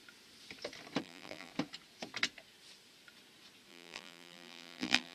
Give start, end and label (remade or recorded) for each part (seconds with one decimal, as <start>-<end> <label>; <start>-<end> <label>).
0.0-1.0 recorded; 1.0-1.5 remade; 1.5-3.7 recorded; 3.7-5.1 remade